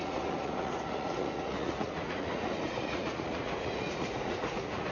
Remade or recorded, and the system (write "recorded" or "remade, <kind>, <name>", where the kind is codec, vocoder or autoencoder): remade, vocoder, Vocos